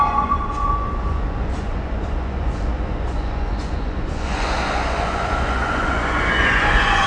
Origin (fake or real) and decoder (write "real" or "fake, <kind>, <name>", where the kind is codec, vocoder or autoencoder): fake, vocoder, Vocos